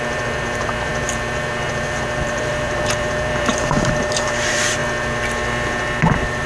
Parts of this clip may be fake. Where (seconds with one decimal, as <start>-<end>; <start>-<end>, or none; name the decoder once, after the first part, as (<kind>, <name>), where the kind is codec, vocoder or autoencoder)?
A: 0.0-4.8 (vocoder, BigVGAN v2); 6.1-6.5